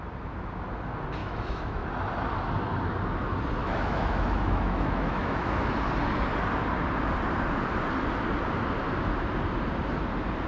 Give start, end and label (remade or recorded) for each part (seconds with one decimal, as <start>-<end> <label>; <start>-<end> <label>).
0.0-1.2 recorded; 1.2-1.9 remade; 1.9-3.6 recorded; 3.6-5.7 remade; 5.7-10.5 recorded